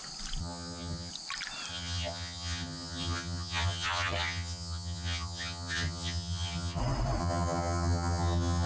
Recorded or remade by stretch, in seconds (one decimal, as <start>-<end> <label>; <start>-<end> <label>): 0.0-0.4 recorded; 0.4-1.1 remade; 1.1-1.7 recorded; 1.7-6.8 remade; 6.8-7.2 recorded; 7.2-8.7 remade